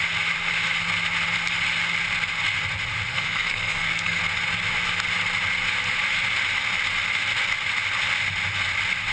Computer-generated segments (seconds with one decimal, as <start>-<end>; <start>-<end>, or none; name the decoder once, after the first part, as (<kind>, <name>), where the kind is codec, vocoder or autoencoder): 3.1-4.2 (codec, SNAC)